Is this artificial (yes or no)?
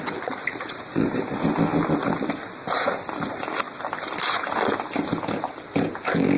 no